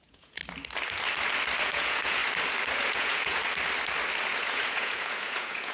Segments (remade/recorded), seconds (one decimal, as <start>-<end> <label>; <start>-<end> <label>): 0.0-0.4 remade; 0.4-1.6 recorded; 1.6-2.2 remade; 2.2-2.8 recorded; 2.8-3.4 remade; 3.4-4.4 recorded; 4.4-5.7 remade